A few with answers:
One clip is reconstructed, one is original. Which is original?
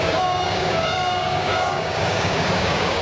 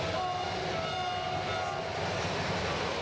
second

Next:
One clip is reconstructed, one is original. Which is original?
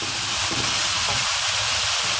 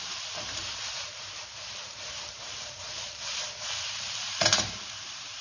first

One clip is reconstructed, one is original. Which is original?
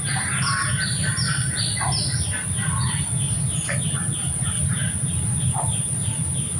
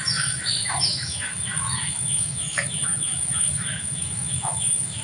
first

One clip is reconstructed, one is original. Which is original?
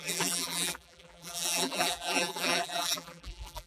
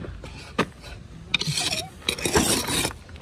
second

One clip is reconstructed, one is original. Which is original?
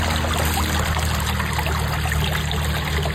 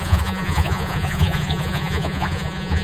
first